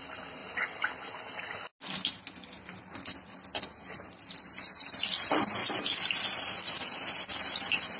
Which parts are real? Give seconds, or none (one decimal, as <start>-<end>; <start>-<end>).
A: 0.0-8.0